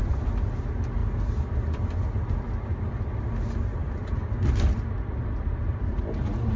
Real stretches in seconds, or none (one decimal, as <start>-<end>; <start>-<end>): 0.5-3.8; 6.0-6.6